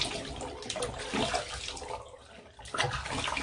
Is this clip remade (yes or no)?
no